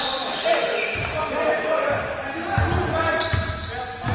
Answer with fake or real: real